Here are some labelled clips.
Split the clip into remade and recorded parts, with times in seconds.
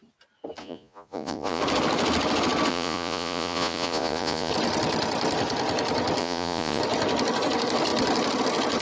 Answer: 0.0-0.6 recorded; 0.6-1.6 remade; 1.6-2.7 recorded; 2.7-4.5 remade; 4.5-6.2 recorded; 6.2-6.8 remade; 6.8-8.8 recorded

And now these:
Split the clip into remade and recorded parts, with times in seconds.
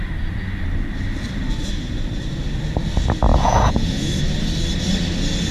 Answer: 0.0-3.3 recorded; 3.3-4.1 remade; 4.1-5.5 recorded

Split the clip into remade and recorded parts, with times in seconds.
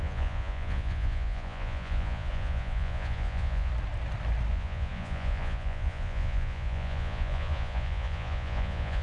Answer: 0.0-3.7 remade; 3.7-4.5 recorded; 4.5-9.0 remade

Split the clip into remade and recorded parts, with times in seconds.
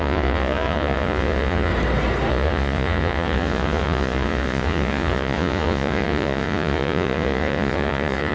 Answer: 0.0-1.7 remade; 1.7-2.3 recorded; 2.3-8.3 remade